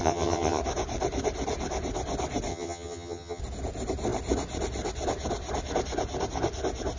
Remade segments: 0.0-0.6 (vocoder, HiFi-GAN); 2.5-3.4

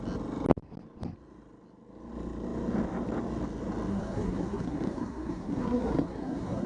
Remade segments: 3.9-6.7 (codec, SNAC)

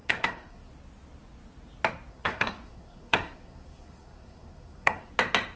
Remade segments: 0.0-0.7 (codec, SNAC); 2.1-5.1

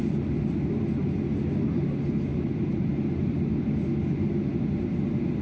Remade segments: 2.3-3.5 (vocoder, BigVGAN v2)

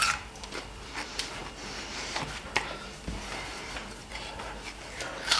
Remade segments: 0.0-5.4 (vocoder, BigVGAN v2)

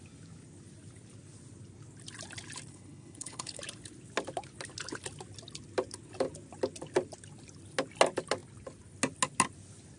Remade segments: 2.7-3.6 (codec, HILCodec)

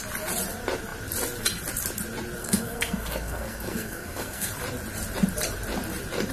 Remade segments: 2.4-4.5 (codec, SNAC)